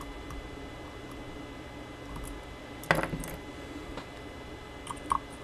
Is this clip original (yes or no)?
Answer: yes